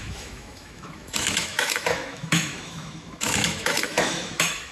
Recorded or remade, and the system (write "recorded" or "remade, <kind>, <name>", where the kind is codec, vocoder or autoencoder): remade, autoencoder, DAC-VAE